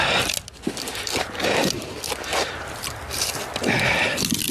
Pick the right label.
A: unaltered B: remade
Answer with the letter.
A